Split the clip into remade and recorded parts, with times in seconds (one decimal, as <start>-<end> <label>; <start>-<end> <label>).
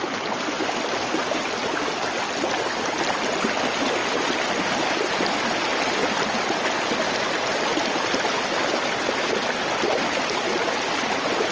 0.0-11.5 recorded